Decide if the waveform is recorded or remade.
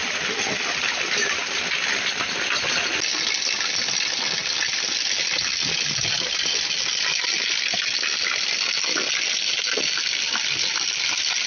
recorded